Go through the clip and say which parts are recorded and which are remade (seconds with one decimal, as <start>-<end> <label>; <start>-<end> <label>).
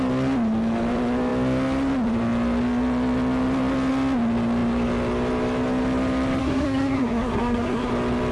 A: 0.0-6.4 recorded; 6.4-7.9 remade; 7.9-8.3 recorded